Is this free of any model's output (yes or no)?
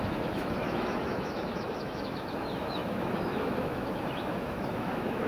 no